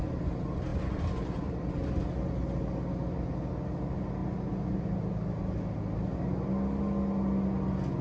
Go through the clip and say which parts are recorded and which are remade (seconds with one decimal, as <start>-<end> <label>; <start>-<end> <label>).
0.0-8.0 recorded